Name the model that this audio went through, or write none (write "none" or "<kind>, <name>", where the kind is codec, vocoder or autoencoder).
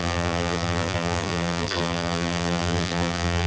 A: vocoder, BigVGAN v2